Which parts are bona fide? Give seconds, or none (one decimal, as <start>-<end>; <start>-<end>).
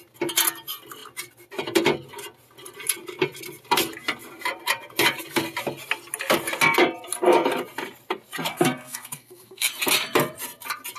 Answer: 0.0-8.5; 9.7-11.0